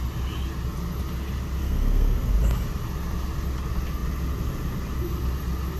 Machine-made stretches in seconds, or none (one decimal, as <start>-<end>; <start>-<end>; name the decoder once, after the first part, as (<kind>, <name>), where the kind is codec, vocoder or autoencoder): 1.6-2.3 (codec, SNAC)